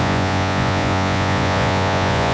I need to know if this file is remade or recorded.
remade